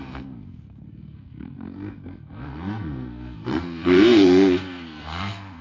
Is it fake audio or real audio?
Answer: fake